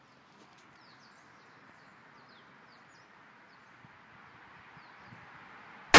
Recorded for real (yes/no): yes